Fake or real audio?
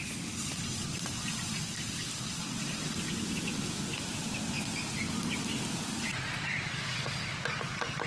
real